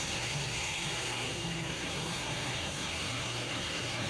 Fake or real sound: fake